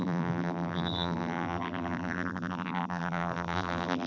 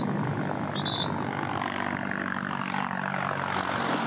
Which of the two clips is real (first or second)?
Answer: second